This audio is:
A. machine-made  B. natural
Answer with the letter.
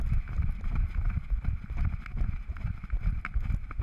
B